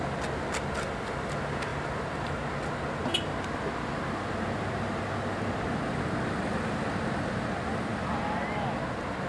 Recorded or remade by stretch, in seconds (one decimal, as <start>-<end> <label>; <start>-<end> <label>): 0.0-9.3 recorded